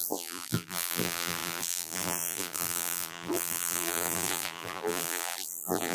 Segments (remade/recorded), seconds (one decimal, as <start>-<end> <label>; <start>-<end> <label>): 0.0-5.9 remade